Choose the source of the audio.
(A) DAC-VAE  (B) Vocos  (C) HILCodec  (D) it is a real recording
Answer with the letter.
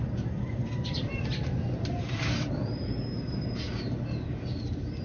D